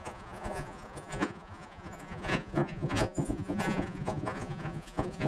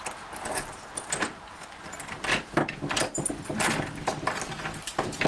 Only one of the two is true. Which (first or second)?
second